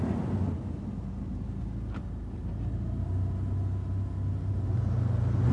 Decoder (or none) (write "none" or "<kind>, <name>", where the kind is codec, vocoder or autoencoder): none